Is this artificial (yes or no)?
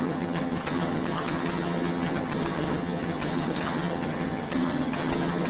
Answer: yes